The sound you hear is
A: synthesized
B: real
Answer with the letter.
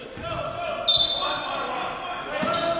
B